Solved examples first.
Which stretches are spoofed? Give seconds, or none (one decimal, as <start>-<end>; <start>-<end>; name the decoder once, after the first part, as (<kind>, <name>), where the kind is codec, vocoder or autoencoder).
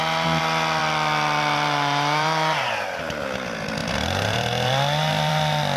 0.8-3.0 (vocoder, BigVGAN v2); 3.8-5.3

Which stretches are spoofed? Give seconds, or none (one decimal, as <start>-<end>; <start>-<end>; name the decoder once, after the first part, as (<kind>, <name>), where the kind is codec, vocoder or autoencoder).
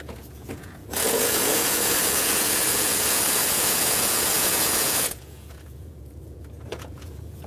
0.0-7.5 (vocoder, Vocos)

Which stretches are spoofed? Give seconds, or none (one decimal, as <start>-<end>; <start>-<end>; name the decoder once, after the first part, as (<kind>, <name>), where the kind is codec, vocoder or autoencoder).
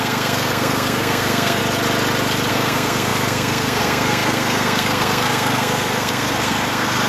0.0-1.6 (codec, SNAC); 2.5-7.1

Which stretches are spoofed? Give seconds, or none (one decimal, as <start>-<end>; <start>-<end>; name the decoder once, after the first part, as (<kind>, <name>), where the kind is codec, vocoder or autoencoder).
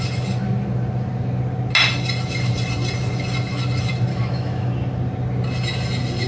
4.1-4.7 (autoencoder, DAC-VAE)